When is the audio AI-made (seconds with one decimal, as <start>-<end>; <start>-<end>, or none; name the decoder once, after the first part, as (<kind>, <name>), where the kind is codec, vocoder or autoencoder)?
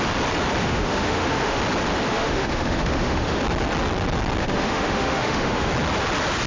0.6-1.6 (autoencoder, DAC-VAE); 2.1-3.4; 4.4-5.7